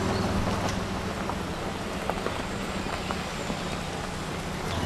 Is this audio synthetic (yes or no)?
no